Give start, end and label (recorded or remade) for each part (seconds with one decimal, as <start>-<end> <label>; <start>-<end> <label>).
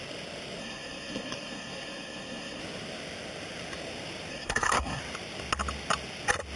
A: 0.0-0.6 recorded; 0.6-2.6 remade; 2.6-4.3 recorded; 4.3-5.0 remade; 5.0-6.6 recorded